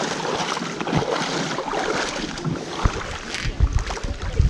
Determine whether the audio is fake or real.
real